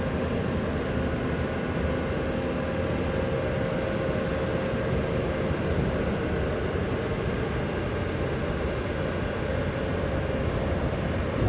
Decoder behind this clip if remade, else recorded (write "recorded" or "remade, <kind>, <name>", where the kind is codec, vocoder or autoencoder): recorded